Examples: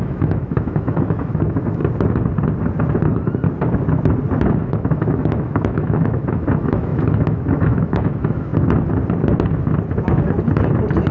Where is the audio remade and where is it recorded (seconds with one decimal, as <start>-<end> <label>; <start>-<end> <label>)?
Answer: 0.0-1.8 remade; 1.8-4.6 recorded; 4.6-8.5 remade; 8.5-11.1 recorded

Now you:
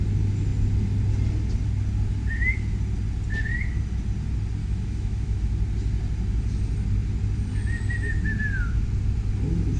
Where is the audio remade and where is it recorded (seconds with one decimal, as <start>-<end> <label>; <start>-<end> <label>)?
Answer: 0.0-4.6 recorded; 4.6-5.4 remade; 5.4-9.8 recorded

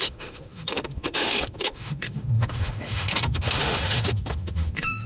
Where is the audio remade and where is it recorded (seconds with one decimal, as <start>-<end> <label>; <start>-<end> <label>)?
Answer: 0.0-5.1 remade

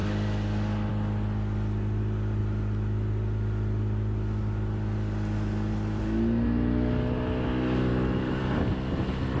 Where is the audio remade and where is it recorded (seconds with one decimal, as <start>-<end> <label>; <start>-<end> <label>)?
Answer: 0.0-7.9 recorded; 7.9-8.4 remade; 8.4-9.4 recorded

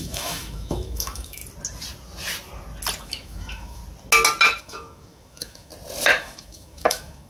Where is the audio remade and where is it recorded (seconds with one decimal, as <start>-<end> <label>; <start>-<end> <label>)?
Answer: 0.0-1.4 remade; 1.4-3.0 recorded; 3.0-3.8 remade; 3.8-4.6 recorded; 4.6-5.7 remade; 5.7-6.2 recorded; 6.2-7.3 remade

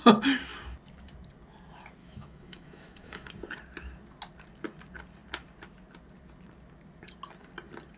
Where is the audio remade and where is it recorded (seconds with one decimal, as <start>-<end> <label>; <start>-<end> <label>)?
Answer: 0.0-2.0 recorded; 2.0-3.3 remade; 3.3-8.0 recorded